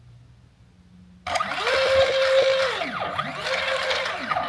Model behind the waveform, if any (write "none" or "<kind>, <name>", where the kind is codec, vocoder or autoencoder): none